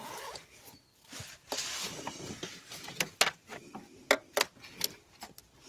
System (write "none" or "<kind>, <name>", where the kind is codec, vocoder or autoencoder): none